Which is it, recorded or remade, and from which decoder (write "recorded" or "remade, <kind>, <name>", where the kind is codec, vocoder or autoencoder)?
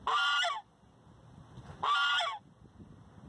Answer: recorded